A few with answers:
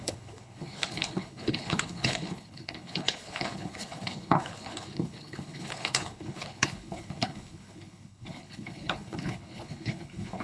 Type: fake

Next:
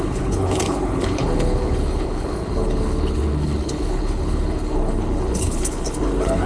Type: fake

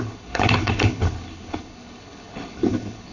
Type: fake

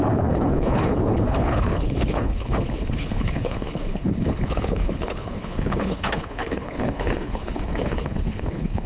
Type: fake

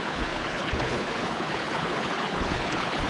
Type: fake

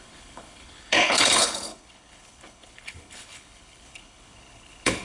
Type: fake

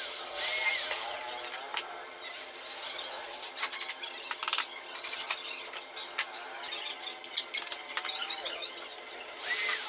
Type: real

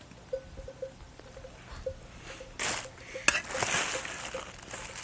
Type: real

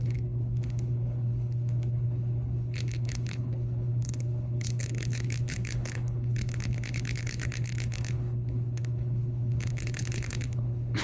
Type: fake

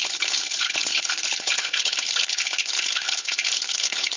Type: fake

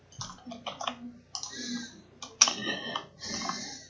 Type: real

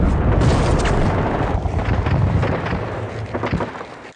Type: real